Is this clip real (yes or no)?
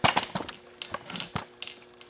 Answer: yes